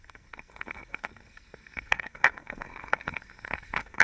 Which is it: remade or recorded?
remade